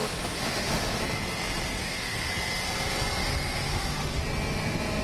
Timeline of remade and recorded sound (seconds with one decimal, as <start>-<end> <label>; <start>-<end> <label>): 0.0-1.0 remade; 1.0-1.8 recorded; 1.8-2.3 remade; 2.3-3.2 recorded; 3.2-4.2 remade; 4.2-5.0 recorded